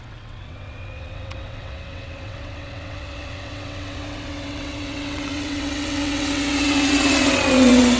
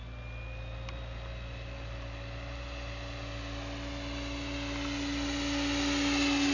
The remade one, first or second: first